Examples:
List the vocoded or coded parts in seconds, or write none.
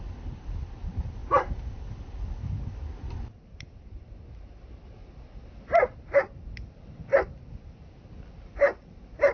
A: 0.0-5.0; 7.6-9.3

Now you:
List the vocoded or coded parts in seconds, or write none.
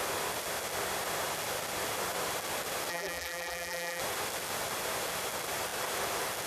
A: 2.9-4.0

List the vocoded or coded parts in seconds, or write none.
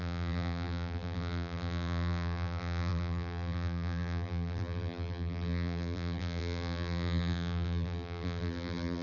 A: 0.0-9.0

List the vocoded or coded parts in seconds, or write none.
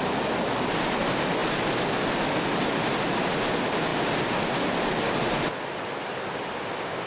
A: 3.9-6.5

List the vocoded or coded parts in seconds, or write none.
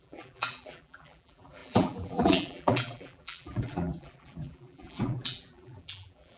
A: 0.0-6.4